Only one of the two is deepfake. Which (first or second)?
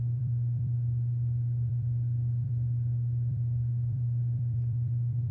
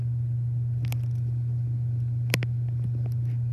first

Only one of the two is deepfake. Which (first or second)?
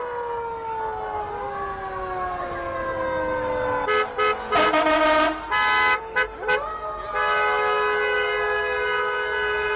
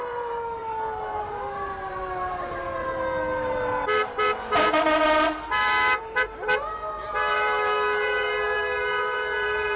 second